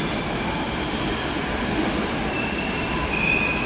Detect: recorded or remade recorded